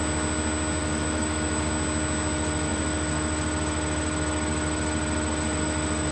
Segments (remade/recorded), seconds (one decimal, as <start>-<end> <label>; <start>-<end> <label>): 0.0-0.8 recorded; 0.8-1.7 remade; 1.7-6.1 recorded